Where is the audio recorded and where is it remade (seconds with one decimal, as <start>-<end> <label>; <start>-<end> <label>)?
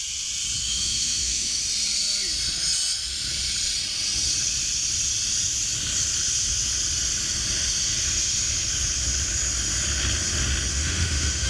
0.0-0.6 recorded; 0.6-1.6 remade; 1.6-10.7 recorded; 10.7-11.5 remade